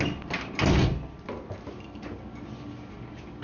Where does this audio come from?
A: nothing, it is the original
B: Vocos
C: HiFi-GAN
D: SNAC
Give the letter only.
A